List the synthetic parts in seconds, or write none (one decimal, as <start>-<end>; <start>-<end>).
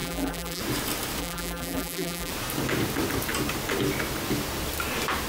0.0-0.6; 1.2-2.3